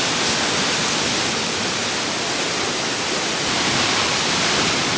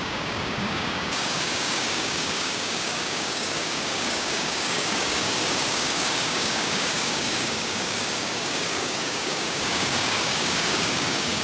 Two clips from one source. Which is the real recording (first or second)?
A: first